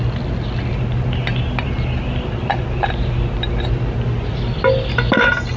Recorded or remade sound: recorded